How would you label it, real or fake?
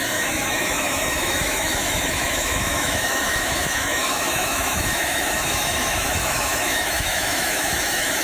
fake